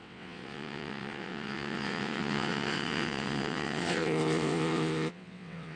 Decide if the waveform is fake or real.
fake